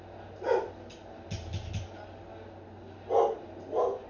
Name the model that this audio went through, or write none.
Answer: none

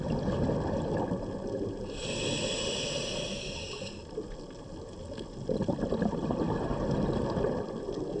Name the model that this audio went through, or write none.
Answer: none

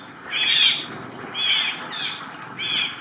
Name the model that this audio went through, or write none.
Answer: none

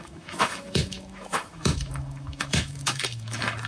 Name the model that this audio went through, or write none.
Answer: autoencoder, DAC-VAE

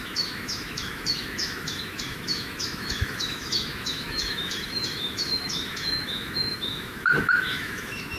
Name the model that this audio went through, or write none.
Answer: autoencoder, DAC-VAE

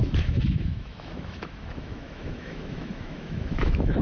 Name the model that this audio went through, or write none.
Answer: autoencoder, DAC-VAE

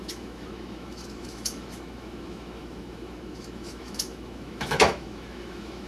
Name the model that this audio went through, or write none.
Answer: autoencoder, DAC-VAE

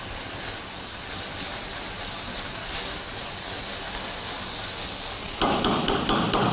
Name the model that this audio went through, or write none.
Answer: none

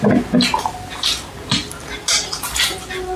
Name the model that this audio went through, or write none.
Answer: none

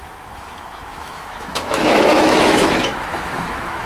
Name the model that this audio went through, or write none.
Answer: autoencoder, DAC-VAE